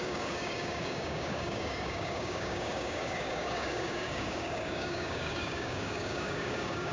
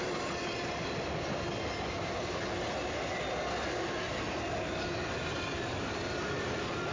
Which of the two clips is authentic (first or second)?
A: second